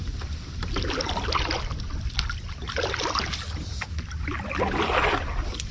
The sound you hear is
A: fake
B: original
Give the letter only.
B